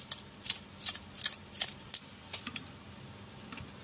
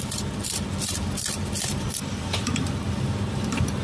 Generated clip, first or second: second